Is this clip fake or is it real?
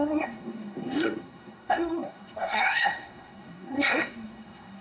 fake